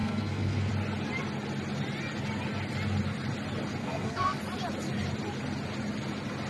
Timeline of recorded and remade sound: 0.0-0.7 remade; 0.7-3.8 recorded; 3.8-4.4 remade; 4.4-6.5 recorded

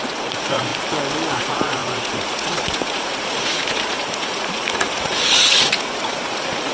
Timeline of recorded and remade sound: 0.0-0.7 remade; 0.7-1.4 recorded; 1.4-6.7 remade

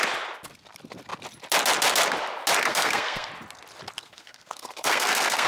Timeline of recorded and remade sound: 0.0-2.7 recorded; 2.7-3.3 remade; 3.3-4.0 recorded; 4.0-5.5 remade

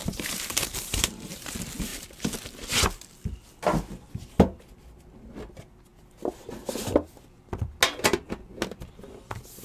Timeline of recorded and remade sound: 0.0-1.5 remade; 1.5-9.6 recorded

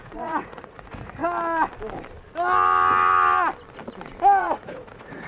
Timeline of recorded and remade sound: 0.0-1.2 remade; 1.2-4.4 recorded; 4.4-5.3 remade

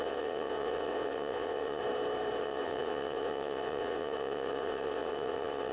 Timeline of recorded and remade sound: 0.0-1.8 remade; 1.8-2.4 recorded; 2.4-5.7 remade

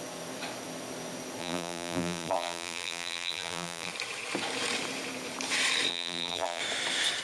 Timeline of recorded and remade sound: 0.0-1.4 recorded; 1.4-3.9 remade; 3.9-5.9 recorded; 5.9-6.6 remade; 6.6-7.2 recorded